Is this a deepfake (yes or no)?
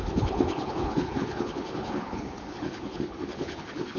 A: yes